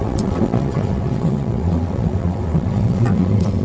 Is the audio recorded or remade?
remade